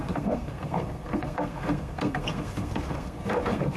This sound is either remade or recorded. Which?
remade